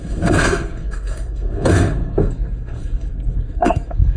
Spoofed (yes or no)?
yes